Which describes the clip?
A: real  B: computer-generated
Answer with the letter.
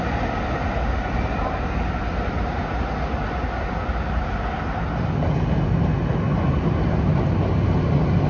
A